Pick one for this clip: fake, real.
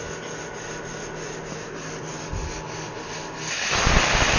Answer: real